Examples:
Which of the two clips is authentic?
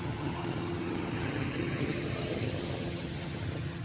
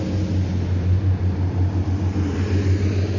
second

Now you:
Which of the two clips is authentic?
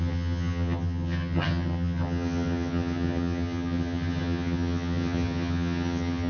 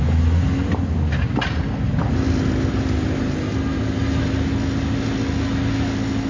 second